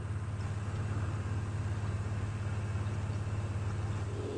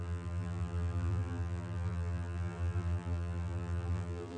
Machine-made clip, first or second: second